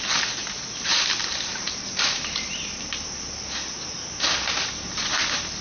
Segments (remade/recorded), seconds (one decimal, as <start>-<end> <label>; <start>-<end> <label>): 0.0-0.4 recorded; 0.4-3.8 remade; 3.8-5.6 recorded